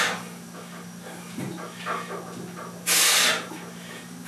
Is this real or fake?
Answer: real